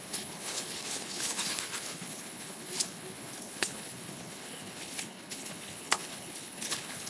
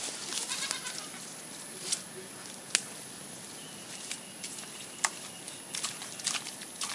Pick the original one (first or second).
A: second